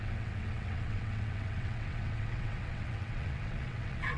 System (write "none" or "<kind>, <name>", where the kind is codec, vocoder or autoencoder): vocoder, WaveNeXt